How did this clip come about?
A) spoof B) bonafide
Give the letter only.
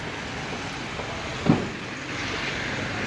B